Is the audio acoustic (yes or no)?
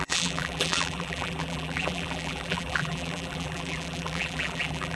no